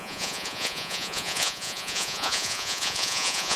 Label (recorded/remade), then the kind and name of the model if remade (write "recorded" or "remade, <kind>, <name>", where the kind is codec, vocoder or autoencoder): remade, vocoder, Vocos